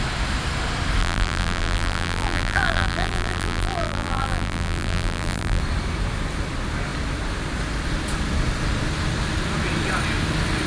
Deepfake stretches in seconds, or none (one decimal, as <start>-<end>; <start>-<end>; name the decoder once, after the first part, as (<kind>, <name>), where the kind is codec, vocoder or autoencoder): 1.0-5.6 (vocoder, BigVGAN v2)